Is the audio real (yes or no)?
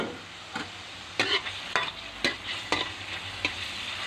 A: yes